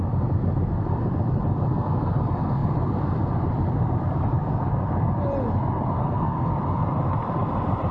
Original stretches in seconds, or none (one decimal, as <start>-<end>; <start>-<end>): 0.0-6.0; 6.5-7.9